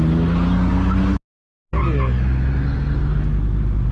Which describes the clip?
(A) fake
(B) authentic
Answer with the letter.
B